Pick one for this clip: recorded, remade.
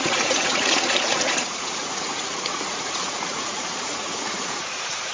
remade